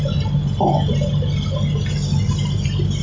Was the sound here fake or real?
real